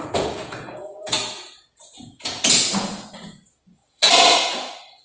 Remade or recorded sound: remade